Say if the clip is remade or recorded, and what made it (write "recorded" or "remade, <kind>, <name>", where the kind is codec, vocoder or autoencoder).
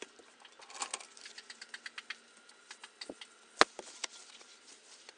recorded